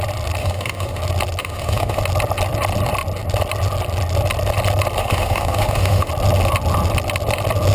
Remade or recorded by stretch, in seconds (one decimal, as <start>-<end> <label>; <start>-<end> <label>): 0.0-0.4 recorded; 0.4-1.0 remade; 1.0-1.4 recorded; 1.4-2.0 remade; 2.0-5.0 recorded; 5.0-6.1 remade; 6.1-7.7 recorded